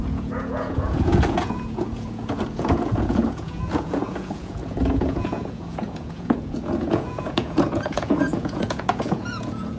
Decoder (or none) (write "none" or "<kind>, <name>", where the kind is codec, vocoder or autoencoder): vocoder, Vocos